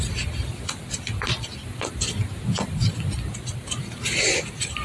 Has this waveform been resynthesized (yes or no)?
no